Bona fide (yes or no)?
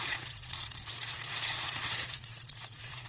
no